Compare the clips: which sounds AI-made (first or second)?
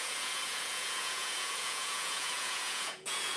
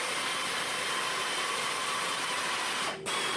first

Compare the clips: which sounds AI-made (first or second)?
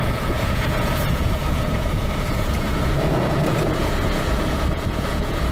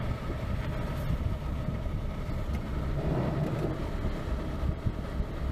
first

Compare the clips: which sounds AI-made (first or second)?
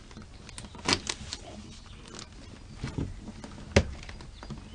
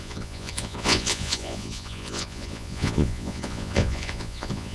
second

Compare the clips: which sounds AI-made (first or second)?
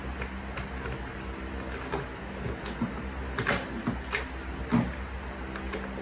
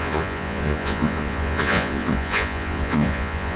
second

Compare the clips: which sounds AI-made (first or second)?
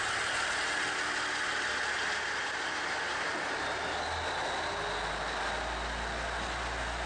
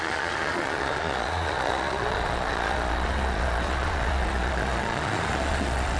second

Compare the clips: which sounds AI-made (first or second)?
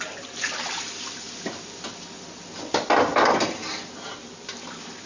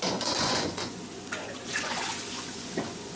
second